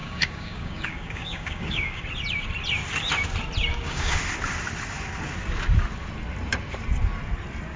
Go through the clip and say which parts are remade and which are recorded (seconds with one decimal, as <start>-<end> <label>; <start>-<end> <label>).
0.0-2.0 remade; 2.0-3.7 recorded; 3.7-4.2 remade; 4.2-7.8 recorded